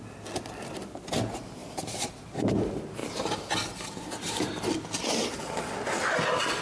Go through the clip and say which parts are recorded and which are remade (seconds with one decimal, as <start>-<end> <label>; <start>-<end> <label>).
0.0-1.6 recorded; 1.6-2.1 remade; 2.1-6.6 recorded